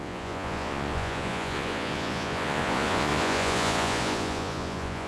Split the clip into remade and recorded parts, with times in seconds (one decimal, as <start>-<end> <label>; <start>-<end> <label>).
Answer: 0.0-5.1 remade